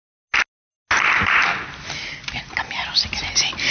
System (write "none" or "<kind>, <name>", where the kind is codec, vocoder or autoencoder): none